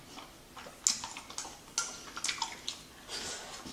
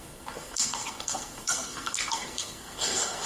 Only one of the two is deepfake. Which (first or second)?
second